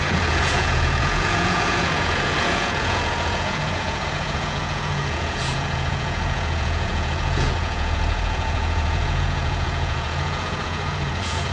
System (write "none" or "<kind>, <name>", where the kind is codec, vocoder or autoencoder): vocoder, Vocos